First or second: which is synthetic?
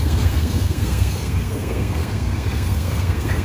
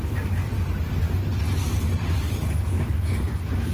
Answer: first